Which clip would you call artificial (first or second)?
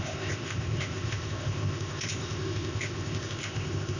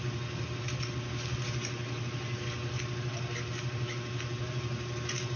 first